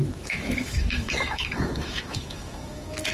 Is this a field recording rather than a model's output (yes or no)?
no